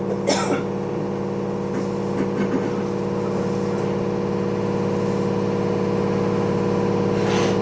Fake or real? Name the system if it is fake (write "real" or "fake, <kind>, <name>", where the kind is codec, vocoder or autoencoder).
real